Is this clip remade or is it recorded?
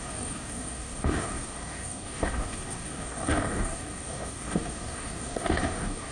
remade